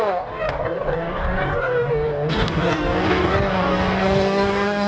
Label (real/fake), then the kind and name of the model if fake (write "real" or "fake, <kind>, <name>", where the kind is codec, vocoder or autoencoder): fake, codec, DAC